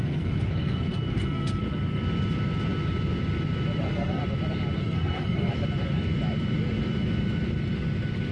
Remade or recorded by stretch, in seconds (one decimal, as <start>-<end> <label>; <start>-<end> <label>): 0.0-1.6 remade; 1.6-3.8 recorded; 3.8-4.2 remade; 4.2-4.8 recorded; 4.8-5.5 remade; 5.5-8.3 recorded

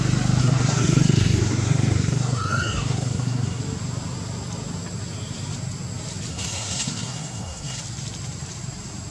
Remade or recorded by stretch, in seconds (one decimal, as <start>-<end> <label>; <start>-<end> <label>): 0.0-0.4 recorded; 0.4-3.6 remade; 3.6-6.3 recorded; 6.3-7.8 remade; 7.8-9.1 recorded

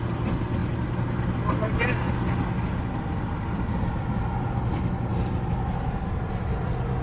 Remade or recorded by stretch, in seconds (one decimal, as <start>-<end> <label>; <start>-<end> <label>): 0.0-7.0 recorded

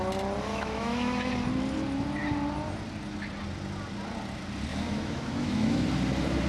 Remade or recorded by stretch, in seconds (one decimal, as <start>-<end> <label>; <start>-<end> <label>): 0.0-0.5 recorded; 0.5-1.3 remade; 1.3-4.7 recorded; 4.7-5.9 remade; 5.9-6.5 recorded

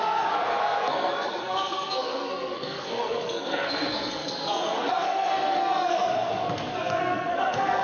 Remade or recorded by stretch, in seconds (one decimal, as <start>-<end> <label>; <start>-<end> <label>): 0.0-7.8 remade